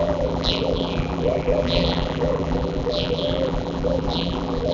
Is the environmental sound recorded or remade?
remade